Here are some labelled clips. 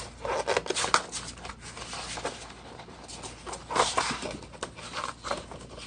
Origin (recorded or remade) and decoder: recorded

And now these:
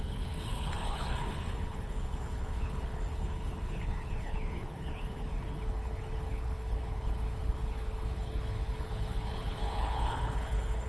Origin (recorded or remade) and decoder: remade, codec, HILCodec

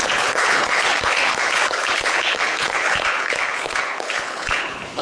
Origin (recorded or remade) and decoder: remade, codec, HILCodec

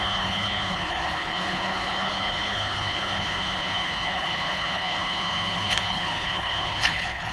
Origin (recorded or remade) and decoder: remade, codec, HILCodec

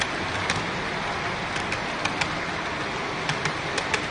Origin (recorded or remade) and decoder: recorded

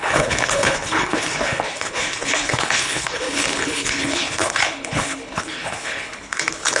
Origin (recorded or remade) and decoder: remade, codec, HILCodec